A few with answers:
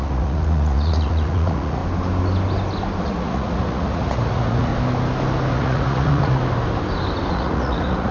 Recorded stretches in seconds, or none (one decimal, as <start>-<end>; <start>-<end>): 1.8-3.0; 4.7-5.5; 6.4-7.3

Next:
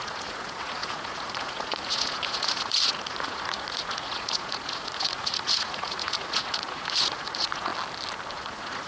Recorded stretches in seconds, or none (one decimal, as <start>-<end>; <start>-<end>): 7.7-8.3

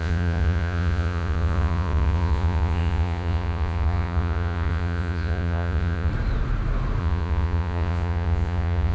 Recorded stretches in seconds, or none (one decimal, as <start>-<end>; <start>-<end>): 6.1-7.0

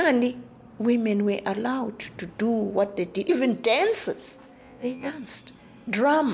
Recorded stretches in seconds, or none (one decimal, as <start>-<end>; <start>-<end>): 0.0-4.6; 5.1-6.3